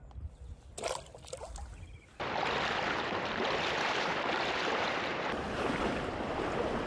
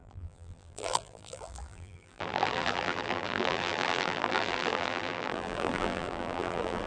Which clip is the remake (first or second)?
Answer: second